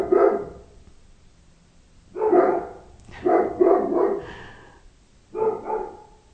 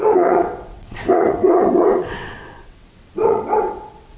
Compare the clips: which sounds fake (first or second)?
second